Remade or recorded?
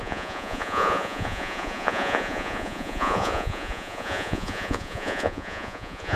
remade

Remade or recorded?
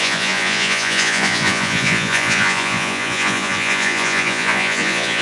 remade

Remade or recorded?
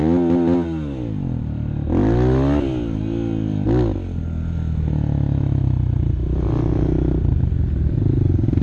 recorded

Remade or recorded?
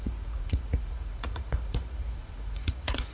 remade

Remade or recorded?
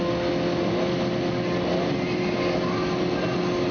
recorded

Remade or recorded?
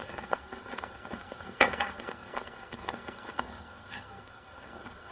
remade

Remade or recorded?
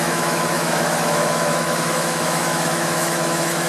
remade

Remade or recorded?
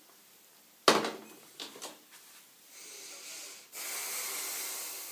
recorded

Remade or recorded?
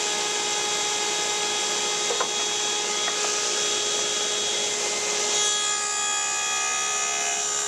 recorded